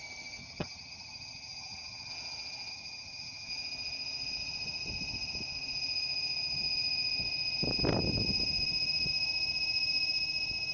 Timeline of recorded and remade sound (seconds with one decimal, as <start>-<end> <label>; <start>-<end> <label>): 0.0-0.4 recorded; 0.4-2.1 remade; 2.1-2.7 recorded; 2.7-3.5 remade; 3.5-10.7 recorded